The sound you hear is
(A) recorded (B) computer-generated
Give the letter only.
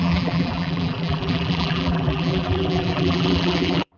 B